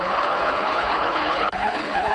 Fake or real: fake